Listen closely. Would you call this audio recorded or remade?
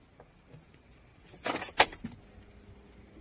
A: recorded